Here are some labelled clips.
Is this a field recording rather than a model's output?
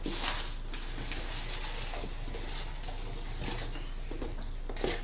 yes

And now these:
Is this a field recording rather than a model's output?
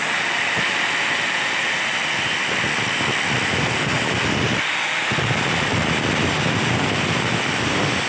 yes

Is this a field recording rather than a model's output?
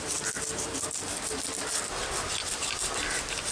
yes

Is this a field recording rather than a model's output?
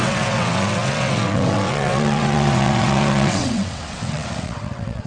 no